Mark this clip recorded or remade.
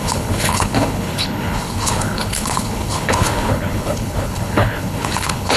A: remade